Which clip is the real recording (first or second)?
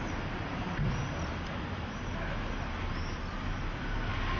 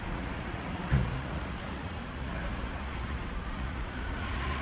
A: first